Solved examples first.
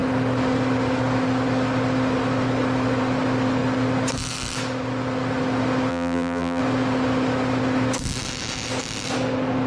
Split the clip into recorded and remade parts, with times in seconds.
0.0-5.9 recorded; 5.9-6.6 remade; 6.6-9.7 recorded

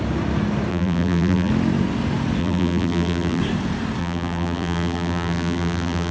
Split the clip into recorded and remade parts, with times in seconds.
0.0-0.7 recorded; 0.7-1.5 remade; 1.5-2.4 recorded; 2.4-3.4 remade; 3.4-4.0 recorded; 4.0-6.1 remade

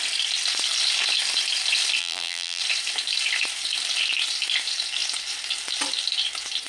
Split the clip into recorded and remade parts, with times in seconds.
0.0-2.0 recorded; 2.0-2.6 remade; 2.6-6.7 recorded

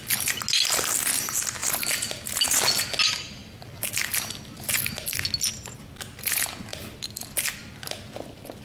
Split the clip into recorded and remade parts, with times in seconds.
0.0-3.4 recorded; 3.4-4.0 remade; 4.0-6.7 recorded; 6.7-7.9 remade; 7.9-8.6 recorded

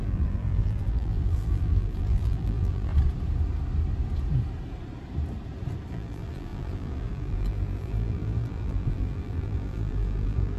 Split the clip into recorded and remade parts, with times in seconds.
0.0-2.9 remade; 2.9-5.9 recorded; 5.9-10.6 remade